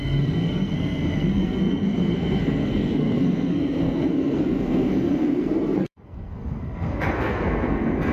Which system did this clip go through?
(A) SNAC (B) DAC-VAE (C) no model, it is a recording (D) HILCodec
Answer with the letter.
A